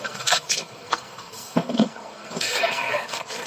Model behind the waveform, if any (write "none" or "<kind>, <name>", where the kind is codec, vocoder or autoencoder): codec, SNAC